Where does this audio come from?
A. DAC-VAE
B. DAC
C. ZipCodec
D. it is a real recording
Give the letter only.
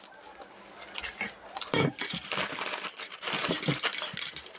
D